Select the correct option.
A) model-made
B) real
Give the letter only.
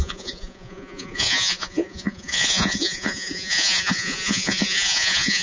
A